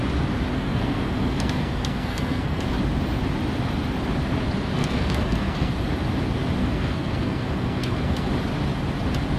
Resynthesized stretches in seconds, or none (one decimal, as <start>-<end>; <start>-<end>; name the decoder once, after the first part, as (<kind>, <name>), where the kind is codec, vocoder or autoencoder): 0.5-2.6 (codec, SNAC); 4.8-5.7; 6.6-8.3